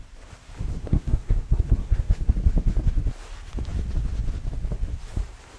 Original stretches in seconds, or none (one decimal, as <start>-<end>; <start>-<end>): 0.0-0.7; 2.3-5.6